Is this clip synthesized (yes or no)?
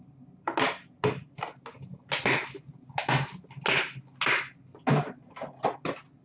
no